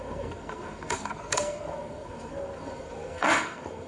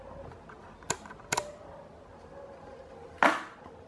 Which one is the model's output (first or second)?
first